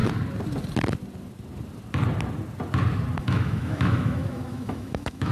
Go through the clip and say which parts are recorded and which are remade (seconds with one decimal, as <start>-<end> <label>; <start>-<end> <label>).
0.0-3.2 recorded; 3.2-5.3 remade

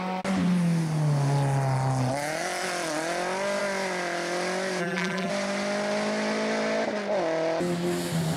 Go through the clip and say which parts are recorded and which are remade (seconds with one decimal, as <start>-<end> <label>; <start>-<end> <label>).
0.0-4.8 recorded; 4.8-5.3 remade; 5.3-8.4 recorded

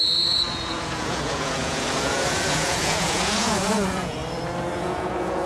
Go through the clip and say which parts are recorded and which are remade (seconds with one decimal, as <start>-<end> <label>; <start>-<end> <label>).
0.0-4.2 remade; 4.2-4.8 recorded; 4.8-5.5 remade

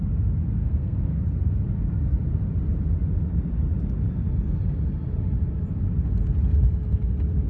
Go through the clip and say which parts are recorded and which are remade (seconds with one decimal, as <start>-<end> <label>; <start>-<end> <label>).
0.0-0.6 recorded; 0.6-1.2 remade; 1.2-7.5 recorded

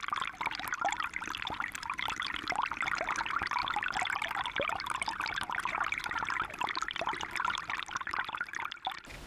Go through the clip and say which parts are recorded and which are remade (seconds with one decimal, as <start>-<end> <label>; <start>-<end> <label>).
0.0-3.6 recorded; 3.6-7.7 remade; 7.7-9.3 recorded

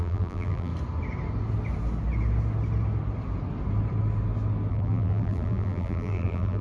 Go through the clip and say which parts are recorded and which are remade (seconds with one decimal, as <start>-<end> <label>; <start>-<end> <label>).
0.0-0.7 remade; 0.7-4.7 recorded; 4.7-6.6 remade

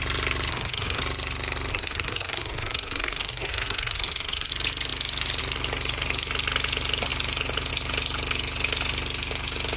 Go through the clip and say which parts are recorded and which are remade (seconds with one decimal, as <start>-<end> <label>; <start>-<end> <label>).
0.0-0.5 recorded; 0.5-1.0 remade; 1.0-1.7 recorded; 1.7-4.5 remade; 4.5-9.8 recorded

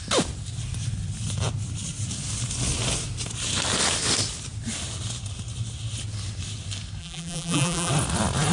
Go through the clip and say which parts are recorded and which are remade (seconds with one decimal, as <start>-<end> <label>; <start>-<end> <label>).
0.0-7.0 recorded; 7.0-7.9 remade; 7.9-8.5 recorded